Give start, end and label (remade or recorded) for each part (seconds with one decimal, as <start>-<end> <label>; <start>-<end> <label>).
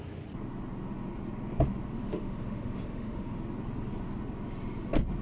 0.0-2.1 recorded; 2.1-3.4 remade; 3.4-5.2 recorded